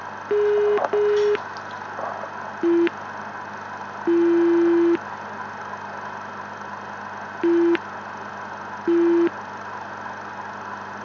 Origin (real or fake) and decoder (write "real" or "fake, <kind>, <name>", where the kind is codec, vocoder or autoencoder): real